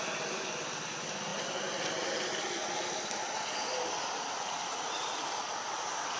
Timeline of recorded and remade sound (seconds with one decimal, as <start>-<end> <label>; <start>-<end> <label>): 0.0-6.2 recorded